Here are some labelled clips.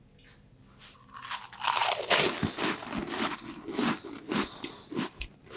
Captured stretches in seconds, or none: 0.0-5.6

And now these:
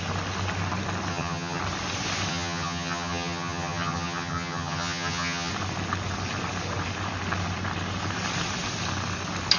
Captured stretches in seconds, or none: 0.0-1.1; 1.6-2.3; 5.5-9.6

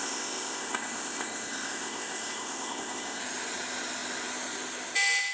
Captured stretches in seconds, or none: 3.2-5.3

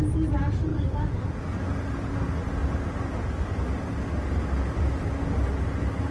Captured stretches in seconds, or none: 0.0-6.1

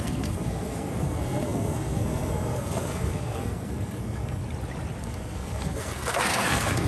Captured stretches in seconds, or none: 4.4-5.0

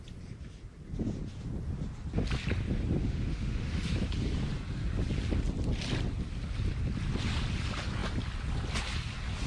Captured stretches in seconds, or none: 0.0-3.0; 3.9-9.5

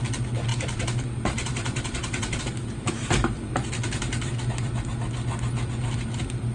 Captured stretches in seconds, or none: 0.0-0.5; 2.4-6.5

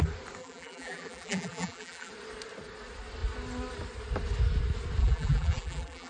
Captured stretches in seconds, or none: 0.0-0.4; 2.1-5.0